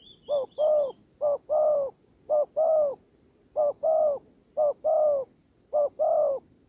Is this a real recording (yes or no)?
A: yes